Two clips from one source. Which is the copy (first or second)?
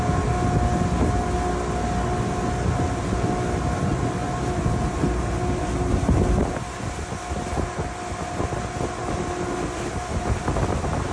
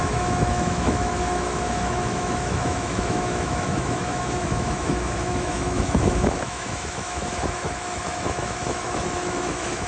second